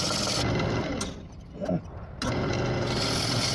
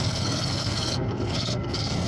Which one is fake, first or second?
second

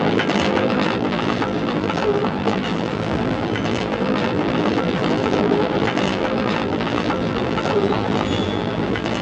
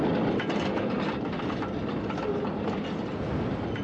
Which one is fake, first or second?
first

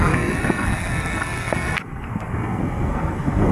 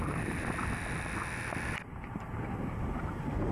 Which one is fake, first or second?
first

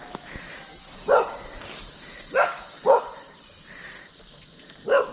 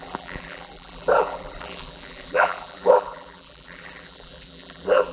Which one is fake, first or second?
second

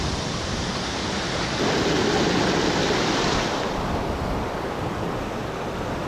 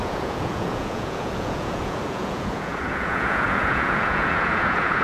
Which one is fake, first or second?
second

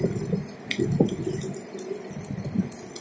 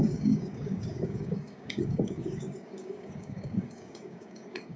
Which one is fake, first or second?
second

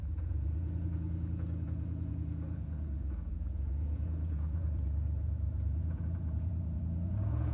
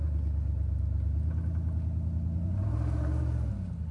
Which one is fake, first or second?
first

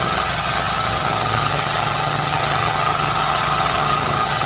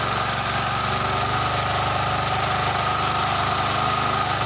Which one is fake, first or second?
first